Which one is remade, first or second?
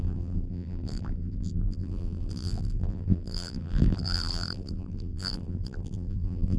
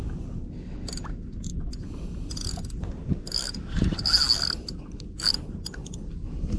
first